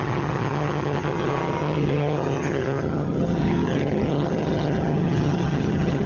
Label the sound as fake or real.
fake